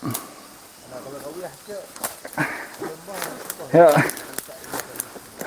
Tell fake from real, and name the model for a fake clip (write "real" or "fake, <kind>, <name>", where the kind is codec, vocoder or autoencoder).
fake, vocoder, BigVGAN v2